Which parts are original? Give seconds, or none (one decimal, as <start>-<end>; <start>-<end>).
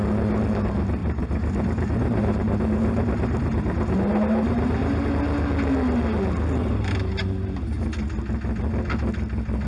0.0-1.0; 5.1-6.6; 7.8-9.7